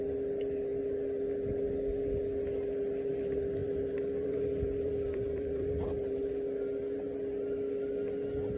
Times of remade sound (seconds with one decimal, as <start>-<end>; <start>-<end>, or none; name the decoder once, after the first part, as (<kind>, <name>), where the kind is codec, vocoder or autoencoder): 3.6-5.7 (vocoder, BigVGAN v2)